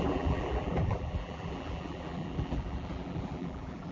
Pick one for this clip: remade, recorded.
remade